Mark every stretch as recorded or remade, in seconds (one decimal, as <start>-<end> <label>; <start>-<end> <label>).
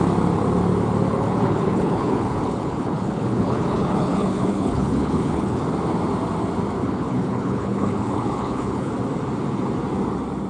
0.0-1.1 recorded; 1.1-5.6 remade; 5.6-6.8 recorded; 6.8-8.9 remade; 8.9-10.5 recorded